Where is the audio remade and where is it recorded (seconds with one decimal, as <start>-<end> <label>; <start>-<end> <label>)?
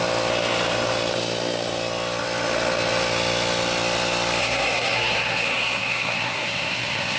0.0-4.4 recorded; 4.4-7.2 remade